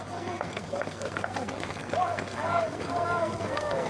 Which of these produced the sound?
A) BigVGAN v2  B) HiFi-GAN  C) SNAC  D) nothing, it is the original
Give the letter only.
C